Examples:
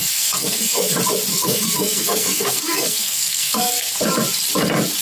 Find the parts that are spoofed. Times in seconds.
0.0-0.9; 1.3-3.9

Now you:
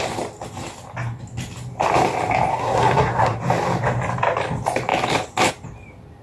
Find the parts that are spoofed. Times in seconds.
2.5-3.4

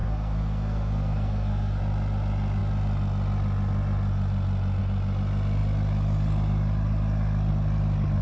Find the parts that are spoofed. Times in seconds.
0.0-1.8

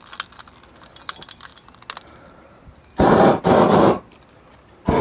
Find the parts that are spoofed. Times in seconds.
none

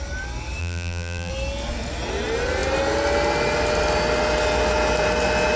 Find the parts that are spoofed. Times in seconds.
0.6-1.3